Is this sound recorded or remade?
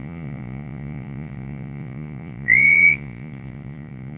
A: remade